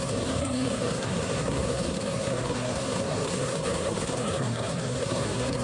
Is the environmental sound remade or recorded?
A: remade